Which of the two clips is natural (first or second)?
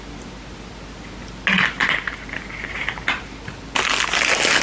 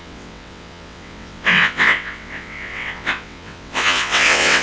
first